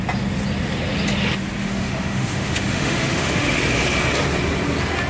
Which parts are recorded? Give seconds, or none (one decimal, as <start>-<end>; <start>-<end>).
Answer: 0.0-1.6; 3.6-5.1

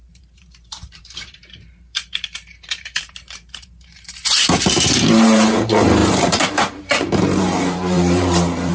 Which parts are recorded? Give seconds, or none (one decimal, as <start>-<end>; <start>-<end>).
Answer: none

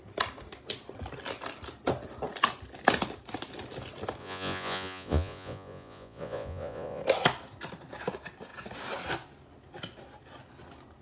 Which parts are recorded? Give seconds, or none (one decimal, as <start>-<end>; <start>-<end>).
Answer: 0.0-4.2; 7.0-11.0

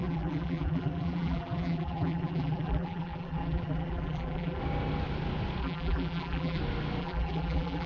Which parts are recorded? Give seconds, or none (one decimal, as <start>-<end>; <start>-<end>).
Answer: 4.6-5.6; 6.6-7.0

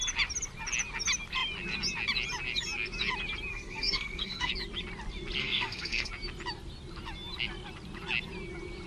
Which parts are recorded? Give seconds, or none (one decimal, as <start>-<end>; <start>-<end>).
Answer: 0.0-3.5; 4.5-5.4; 6.1-8.9

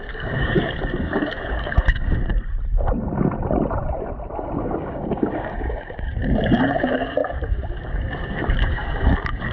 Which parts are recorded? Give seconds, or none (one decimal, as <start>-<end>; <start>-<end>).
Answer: 2.3-4.6

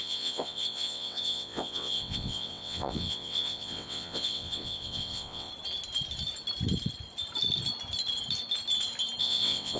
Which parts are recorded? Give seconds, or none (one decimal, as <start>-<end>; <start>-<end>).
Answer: 5.5-9.2